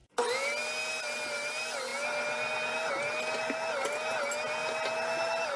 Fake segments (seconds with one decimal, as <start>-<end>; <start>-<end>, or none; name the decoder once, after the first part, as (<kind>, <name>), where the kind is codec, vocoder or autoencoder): none